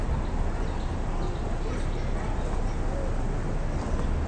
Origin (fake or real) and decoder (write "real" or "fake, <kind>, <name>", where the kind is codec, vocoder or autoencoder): real